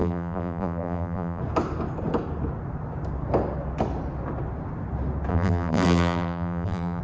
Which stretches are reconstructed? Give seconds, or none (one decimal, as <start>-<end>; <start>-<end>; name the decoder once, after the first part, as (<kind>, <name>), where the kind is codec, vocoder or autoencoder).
0.0-1.4 (vocoder, BigVGAN v2); 5.3-7.0